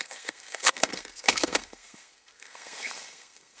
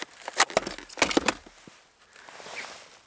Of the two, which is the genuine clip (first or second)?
second